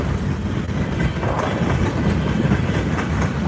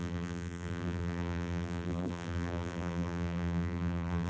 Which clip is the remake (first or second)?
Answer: second